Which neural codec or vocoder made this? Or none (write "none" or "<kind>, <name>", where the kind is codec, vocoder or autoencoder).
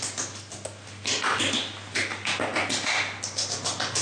none